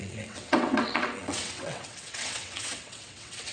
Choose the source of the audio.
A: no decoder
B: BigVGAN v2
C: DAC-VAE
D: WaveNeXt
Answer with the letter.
D